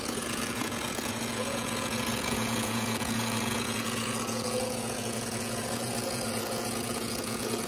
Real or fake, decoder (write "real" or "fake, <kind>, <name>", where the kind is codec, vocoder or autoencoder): fake, vocoder, Vocos